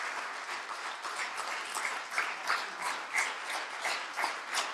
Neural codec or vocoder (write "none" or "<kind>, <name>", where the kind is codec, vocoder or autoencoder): none